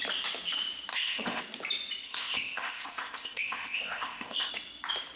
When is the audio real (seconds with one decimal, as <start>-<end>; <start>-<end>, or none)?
0.0-0.9; 1.4-2.0; 4.5-5.2